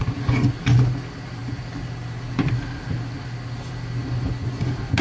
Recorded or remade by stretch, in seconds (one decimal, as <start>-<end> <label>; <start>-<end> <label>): 0.0-5.0 recorded